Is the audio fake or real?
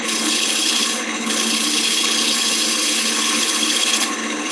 fake